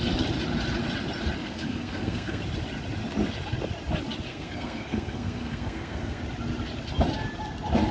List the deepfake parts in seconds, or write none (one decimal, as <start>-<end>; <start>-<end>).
1.4-2.4; 4.3-6.2